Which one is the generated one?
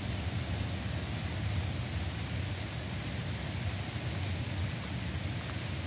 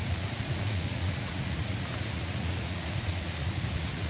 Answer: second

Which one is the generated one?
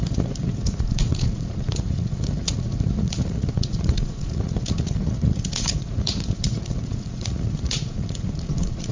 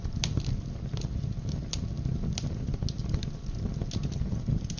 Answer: first